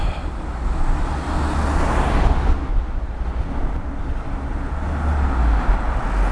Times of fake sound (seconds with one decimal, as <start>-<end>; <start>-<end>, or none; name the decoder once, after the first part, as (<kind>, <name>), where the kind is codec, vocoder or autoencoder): 2.7-3.2 (vocoder, BigVGAN v2)